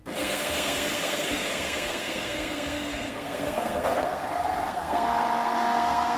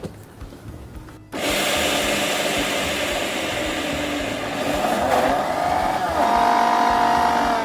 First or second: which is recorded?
second